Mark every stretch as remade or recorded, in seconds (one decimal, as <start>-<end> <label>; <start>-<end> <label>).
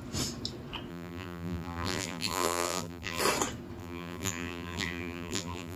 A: 0.0-0.9 recorded; 0.9-3.2 remade; 3.2-3.8 recorded; 3.8-5.8 remade